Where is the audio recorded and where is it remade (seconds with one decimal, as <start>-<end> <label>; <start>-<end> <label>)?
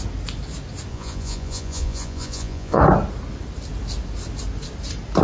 0.0-0.9 recorded; 0.9-2.8 remade; 2.8-5.2 recorded